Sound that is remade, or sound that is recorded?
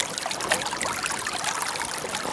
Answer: recorded